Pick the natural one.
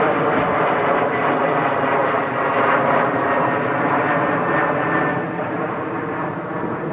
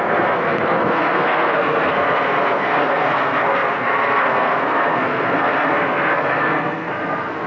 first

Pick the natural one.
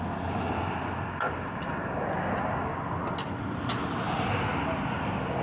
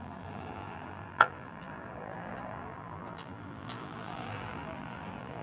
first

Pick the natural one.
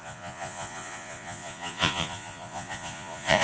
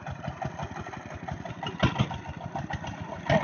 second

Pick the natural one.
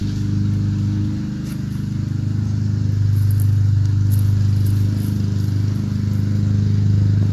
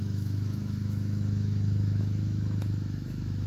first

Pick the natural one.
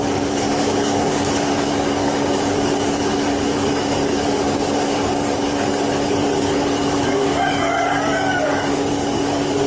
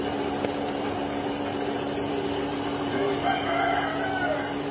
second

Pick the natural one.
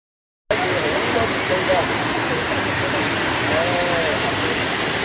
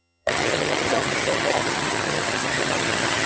first